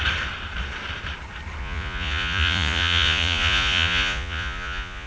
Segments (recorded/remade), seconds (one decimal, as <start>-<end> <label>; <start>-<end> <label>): 0.0-1.6 recorded; 1.6-5.1 remade